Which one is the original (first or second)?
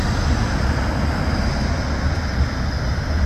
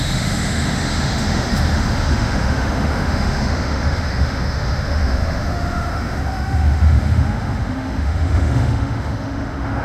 first